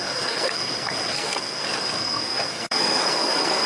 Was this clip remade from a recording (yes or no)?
yes